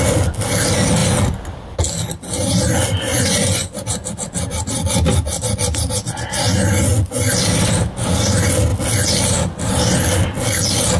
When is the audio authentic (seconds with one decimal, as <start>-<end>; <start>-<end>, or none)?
0.0-3.1; 3.8-11.0